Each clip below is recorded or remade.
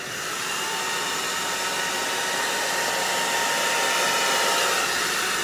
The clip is recorded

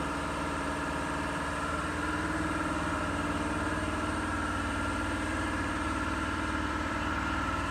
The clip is remade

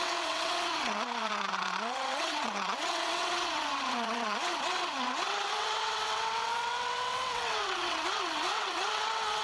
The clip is remade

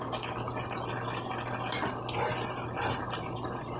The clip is recorded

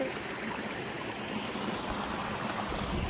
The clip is recorded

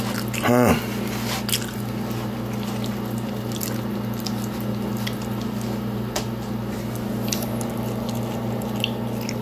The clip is recorded